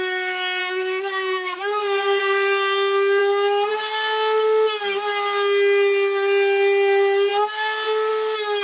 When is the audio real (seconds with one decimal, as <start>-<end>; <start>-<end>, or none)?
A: 0.0-0.6; 2.2-8.6